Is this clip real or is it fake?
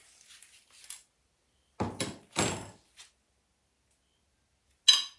real